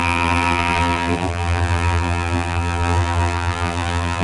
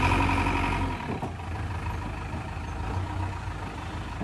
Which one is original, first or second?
second